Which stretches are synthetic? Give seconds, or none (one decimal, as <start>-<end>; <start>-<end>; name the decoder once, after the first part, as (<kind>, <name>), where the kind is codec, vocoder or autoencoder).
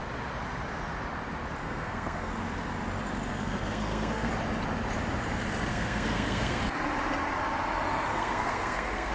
1.6-2.3 (codec, SNAC); 3.3-4.3; 5.7-6.6; 8.1-9.1